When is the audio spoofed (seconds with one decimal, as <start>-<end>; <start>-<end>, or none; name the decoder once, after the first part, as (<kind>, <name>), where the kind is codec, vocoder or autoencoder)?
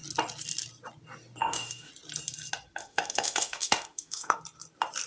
1.4-1.9 (autoencoder, DAC-VAE); 2.8-4.4